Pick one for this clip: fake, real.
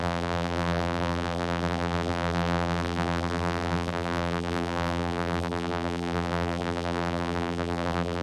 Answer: fake